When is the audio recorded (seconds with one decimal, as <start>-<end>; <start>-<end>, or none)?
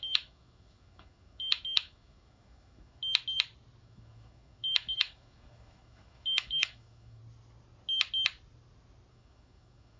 3.0-3.8; 7.2-9.1